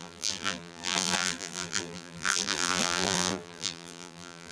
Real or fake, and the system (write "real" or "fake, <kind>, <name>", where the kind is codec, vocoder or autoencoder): fake, vocoder, BigVGAN v2